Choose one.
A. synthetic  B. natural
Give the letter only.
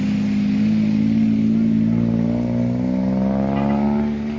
B